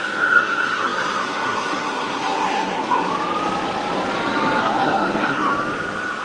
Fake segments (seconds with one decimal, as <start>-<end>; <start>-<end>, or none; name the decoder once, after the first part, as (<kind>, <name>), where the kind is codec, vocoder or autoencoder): 0.0-3.1 (codec, SNAC); 4.6-5.5